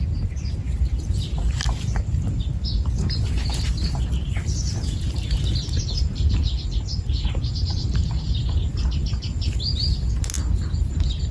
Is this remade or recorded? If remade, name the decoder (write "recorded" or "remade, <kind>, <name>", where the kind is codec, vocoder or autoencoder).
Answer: recorded